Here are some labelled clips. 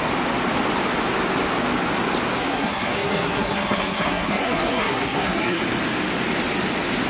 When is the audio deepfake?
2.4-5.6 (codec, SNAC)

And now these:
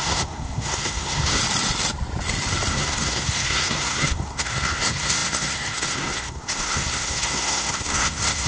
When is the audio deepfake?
0.0-1.4 (codec, SNAC); 2.7-8.5

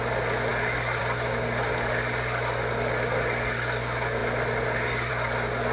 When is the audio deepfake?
none

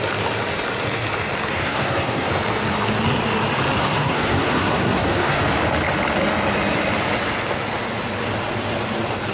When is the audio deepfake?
1.5-2.3 (codec, SNAC); 3.8-5.4

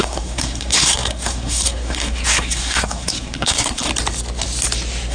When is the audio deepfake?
0.0-3.9 (codec, SNAC)

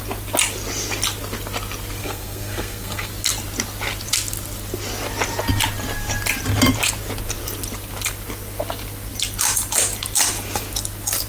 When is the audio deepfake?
2.0-3.1 (codec, SNAC)

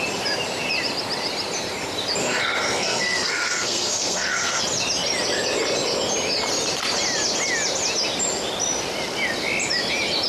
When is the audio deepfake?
2.2-4.6 (codec, SNAC)

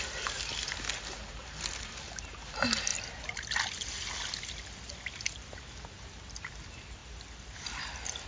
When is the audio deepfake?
none